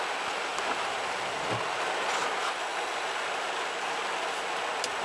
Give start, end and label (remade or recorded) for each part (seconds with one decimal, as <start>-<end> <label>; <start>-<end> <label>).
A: 0.0-5.0 recorded

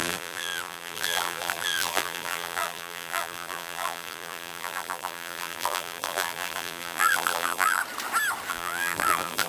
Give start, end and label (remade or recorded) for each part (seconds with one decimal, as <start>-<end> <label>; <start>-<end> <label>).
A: 0.0-7.8 remade; 7.8-8.5 recorded; 8.5-9.5 remade

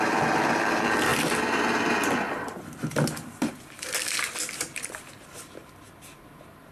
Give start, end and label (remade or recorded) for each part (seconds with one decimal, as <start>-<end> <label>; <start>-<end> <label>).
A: 0.0-1.1 recorded; 1.1-5.1 remade; 5.1-6.7 recorded

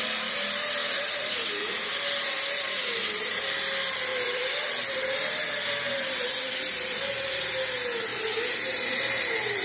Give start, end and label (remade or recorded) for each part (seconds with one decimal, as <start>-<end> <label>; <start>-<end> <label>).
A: 0.0-0.8 recorded; 0.8-1.6 remade; 1.6-4.1 recorded; 4.1-6.5 remade; 6.5-9.6 recorded

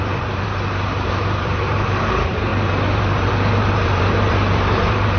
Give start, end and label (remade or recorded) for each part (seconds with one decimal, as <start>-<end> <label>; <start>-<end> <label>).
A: 0.0-5.2 remade

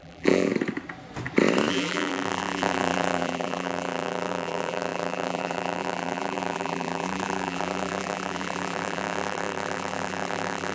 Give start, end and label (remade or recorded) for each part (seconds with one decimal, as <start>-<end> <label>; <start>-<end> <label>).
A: 0.0-0.5 remade; 0.5-1.7 recorded; 1.7-10.7 remade

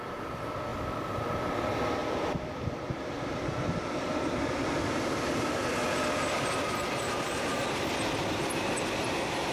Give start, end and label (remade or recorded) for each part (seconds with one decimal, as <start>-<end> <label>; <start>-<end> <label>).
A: 0.0-0.7 recorded; 0.7-1.4 remade; 1.4-2.0 recorded; 2.0-3.6 remade; 3.6-9.5 recorded

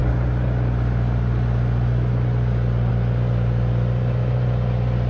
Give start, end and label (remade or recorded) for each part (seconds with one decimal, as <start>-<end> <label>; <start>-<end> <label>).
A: 0.0-5.1 recorded